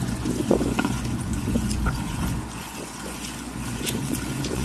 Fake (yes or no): yes